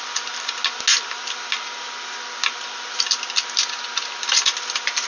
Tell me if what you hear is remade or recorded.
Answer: recorded